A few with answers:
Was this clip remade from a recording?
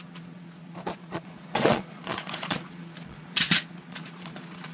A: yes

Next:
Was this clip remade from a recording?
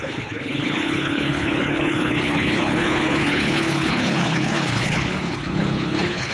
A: yes